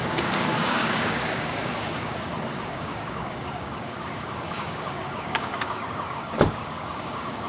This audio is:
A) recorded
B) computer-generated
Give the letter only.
B